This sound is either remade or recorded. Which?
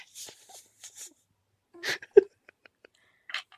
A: remade